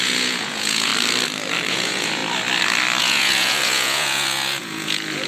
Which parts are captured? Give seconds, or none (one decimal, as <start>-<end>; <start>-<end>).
0.9-1.7; 2.2-3.0